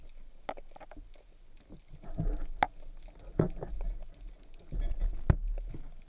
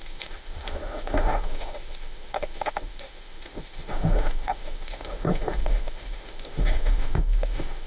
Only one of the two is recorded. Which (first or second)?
first